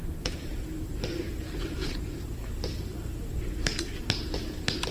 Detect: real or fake fake